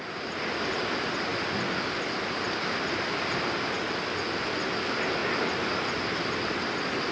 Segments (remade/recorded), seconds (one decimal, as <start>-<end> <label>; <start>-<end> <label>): 0.0-7.1 recorded